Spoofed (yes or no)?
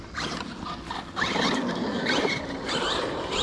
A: no